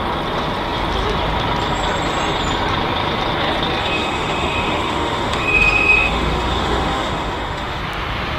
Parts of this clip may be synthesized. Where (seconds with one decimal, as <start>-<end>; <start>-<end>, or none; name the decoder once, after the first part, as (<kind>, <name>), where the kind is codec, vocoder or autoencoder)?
3.8-7.8 (autoencoder, DAC-VAE)